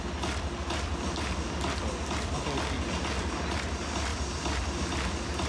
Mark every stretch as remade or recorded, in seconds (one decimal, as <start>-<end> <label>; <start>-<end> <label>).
0.0-5.5 recorded